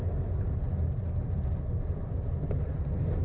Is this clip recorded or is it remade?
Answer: recorded